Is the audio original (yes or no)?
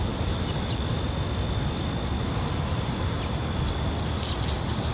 yes